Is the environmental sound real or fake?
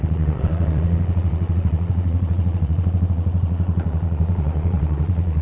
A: fake